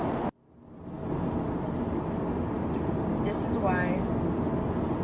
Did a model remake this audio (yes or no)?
no